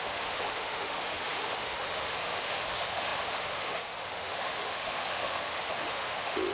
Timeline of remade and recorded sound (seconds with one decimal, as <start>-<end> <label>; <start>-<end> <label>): 0.0-6.5 remade